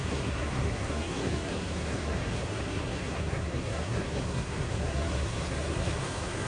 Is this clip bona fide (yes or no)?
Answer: no